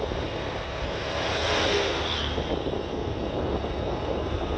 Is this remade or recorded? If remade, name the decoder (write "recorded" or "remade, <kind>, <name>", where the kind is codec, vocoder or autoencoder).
recorded